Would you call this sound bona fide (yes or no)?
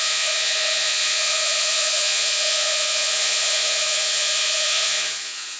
no